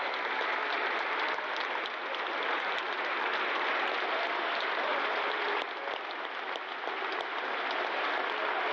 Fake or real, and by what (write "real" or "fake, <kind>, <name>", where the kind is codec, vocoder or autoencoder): real